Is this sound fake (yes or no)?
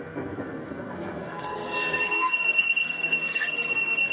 yes